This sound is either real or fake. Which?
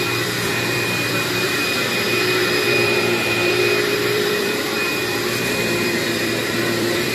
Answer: fake